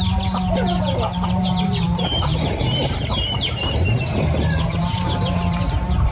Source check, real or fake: fake